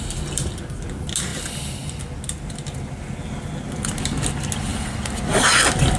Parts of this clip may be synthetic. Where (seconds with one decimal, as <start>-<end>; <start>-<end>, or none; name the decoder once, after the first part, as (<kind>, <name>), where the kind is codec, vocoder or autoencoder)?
none